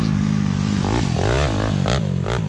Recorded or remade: recorded